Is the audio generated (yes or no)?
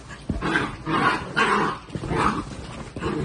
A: no